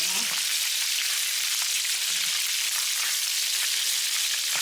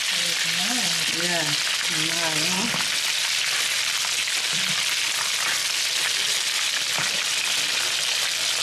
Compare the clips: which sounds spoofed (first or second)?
first